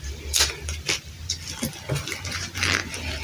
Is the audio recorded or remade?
recorded